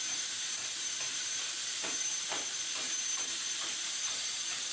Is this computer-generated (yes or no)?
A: yes